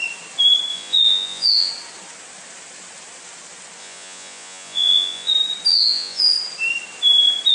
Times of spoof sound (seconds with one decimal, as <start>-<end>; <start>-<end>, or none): 0.7-1.7; 3.8-5.3; 5.7-6.2